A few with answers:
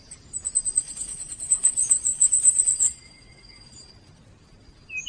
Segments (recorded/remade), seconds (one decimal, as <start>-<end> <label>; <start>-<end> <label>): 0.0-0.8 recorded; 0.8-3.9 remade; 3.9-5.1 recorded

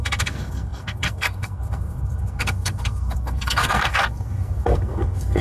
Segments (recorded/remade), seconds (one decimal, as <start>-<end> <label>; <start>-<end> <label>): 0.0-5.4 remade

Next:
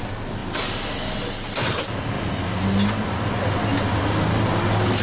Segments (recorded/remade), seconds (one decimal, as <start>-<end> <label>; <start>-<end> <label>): 0.0-5.0 recorded